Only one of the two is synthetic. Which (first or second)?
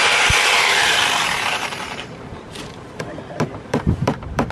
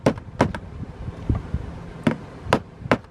first